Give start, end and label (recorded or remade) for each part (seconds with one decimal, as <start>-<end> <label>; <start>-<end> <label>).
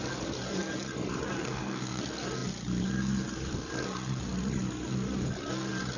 0.0-1.4 recorded; 1.4-2.0 remade; 2.0-6.0 recorded